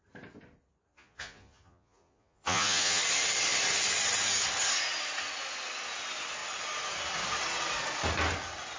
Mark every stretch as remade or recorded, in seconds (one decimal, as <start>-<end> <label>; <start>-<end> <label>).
0.0-0.9 recorded; 0.9-3.0 remade; 3.0-8.8 recorded

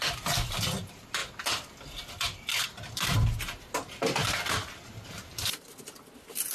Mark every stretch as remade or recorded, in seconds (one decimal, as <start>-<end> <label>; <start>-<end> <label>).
0.0-6.5 recorded

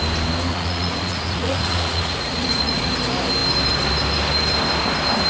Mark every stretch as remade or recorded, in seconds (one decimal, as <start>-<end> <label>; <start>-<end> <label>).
0.0-0.5 recorded; 0.5-2.9 remade; 2.9-5.3 recorded

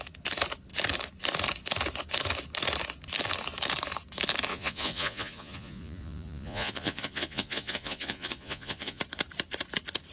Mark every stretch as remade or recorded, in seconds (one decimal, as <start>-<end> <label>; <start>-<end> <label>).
0.0-4.5 recorded; 4.5-9.0 remade; 9.0-10.1 recorded

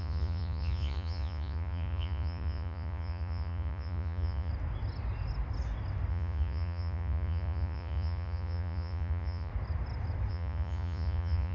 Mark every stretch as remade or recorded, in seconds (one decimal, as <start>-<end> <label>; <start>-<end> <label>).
0.0-4.5 remade; 4.5-6.1 recorded; 6.1-9.5 remade; 9.5-10.3 recorded; 10.3-11.5 remade

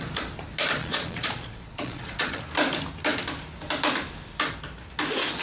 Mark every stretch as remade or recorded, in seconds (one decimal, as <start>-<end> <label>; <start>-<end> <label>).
0.0-0.8 recorded; 0.8-2.4 remade; 2.4-5.4 recorded